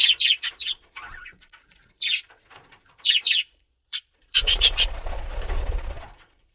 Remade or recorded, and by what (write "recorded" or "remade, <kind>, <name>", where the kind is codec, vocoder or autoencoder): remade, vocoder, Vocos